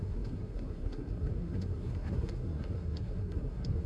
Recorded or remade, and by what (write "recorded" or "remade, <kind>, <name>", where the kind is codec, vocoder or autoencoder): remade, codec, SNAC